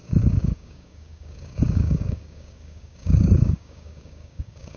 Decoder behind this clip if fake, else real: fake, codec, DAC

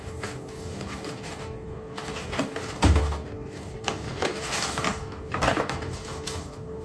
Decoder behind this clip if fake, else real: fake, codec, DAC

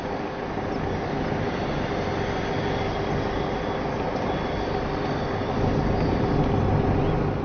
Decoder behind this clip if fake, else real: real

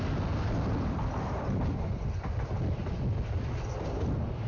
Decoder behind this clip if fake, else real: real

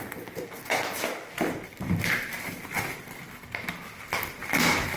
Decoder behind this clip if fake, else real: real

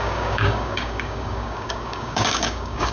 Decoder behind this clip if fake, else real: fake, codec, DAC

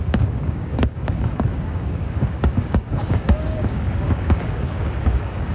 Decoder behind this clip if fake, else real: fake, codec, DAC